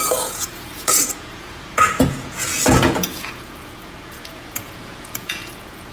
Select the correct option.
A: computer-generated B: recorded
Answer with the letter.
A